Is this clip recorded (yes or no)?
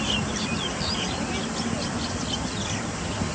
yes